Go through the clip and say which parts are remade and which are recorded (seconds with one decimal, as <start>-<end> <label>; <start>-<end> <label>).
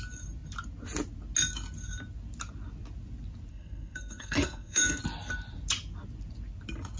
0.0-3.5 recorded; 3.5-5.0 remade; 5.0-7.0 recorded